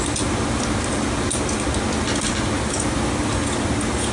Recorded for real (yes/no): yes